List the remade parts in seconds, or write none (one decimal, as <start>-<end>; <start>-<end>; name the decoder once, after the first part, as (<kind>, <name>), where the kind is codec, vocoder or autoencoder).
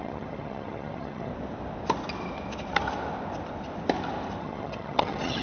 0.0-1.3 (vocoder, HiFi-GAN); 4.4-5.4